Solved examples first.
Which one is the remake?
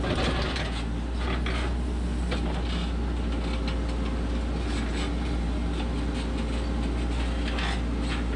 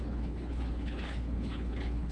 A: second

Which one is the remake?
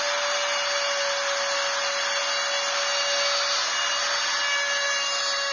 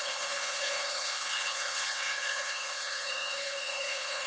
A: second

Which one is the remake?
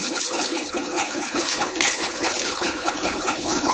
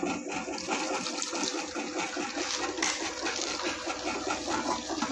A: first